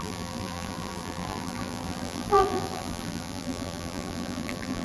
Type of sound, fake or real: fake